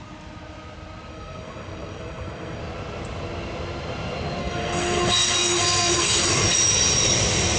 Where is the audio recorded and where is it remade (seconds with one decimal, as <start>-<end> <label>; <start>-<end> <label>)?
0.0-1.1 recorded; 1.1-2.6 remade; 2.6-4.4 recorded; 4.4-6.3 remade; 6.3-7.6 recorded